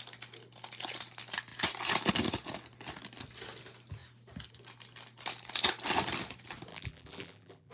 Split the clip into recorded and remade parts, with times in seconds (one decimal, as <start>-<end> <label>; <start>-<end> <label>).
0.0-6.7 recorded; 6.7-7.7 remade